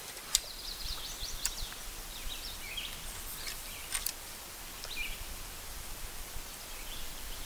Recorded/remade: remade